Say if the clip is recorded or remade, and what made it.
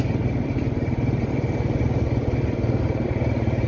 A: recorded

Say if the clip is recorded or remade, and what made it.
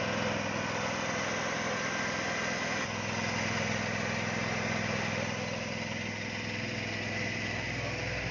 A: recorded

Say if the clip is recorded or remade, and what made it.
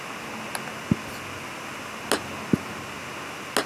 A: recorded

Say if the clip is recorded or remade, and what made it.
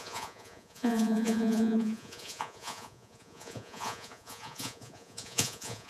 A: remade, vocoder, Vocos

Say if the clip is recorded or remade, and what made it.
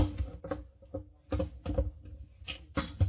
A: recorded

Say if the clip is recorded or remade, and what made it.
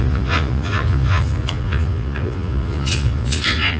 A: remade, vocoder, Vocos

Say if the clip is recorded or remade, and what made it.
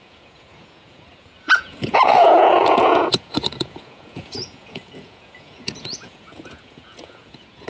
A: remade, vocoder, Vocos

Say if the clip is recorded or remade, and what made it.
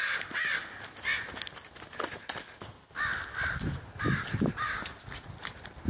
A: recorded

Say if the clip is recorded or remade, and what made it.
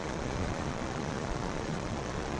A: remade, vocoder, Vocos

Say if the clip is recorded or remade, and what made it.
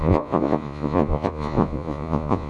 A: remade, vocoder, Vocos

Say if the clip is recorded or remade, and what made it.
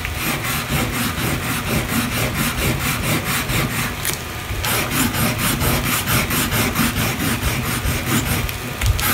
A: recorded